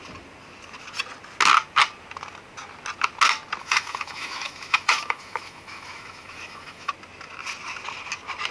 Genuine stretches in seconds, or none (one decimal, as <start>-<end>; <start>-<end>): 0.0-3.6; 6.9-8.5